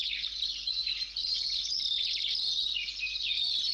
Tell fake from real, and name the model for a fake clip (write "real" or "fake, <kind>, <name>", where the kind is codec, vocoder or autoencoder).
real